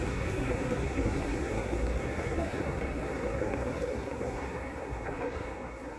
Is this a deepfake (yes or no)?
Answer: yes